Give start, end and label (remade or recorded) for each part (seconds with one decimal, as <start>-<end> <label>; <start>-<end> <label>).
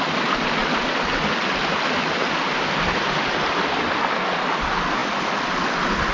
0.0-6.1 recorded